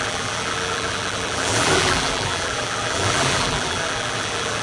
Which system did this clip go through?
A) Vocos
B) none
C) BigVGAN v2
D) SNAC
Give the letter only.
C